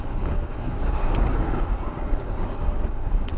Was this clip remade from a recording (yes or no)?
yes